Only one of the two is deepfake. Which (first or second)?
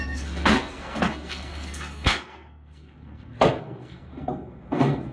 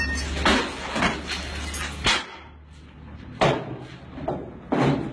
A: first